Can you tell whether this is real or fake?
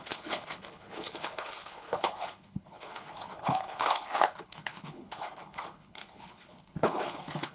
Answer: fake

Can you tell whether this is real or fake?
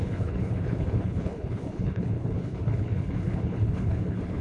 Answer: fake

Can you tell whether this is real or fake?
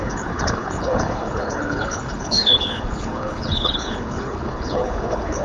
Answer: fake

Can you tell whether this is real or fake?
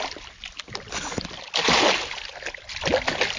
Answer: real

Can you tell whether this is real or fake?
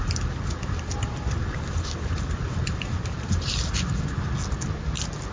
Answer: real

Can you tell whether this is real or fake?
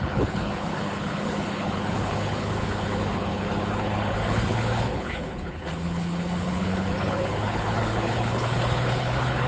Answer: fake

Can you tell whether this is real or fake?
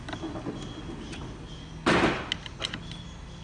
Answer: real